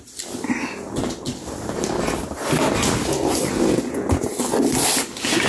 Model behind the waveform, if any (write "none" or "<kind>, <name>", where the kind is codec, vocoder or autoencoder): none